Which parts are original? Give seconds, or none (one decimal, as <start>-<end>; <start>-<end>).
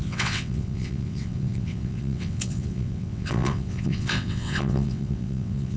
none